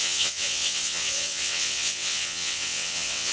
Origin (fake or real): fake